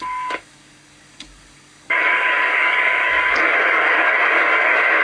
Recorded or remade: remade